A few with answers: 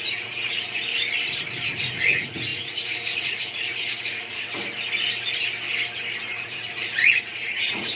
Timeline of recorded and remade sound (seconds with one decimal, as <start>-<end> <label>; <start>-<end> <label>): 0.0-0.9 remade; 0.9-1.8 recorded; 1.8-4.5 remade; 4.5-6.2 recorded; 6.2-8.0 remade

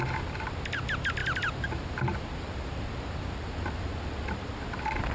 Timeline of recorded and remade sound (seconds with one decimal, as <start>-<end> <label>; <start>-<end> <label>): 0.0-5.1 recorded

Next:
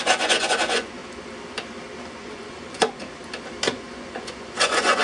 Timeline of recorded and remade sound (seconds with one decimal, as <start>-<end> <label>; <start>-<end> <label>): 0.0-1.0 remade; 1.0-2.1 recorded; 2.1-2.9 remade; 2.9-3.7 recorded; 3.7-5.0 remade